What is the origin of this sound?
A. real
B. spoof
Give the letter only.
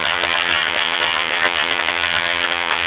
B